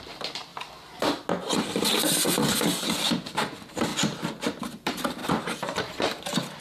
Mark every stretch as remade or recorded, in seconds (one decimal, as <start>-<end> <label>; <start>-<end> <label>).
0.0-0.5 remade; 0.5-3.1 recorded; 3.1-3.9 remade; 3.9-4.6 recorded; 4.6-6.6 remade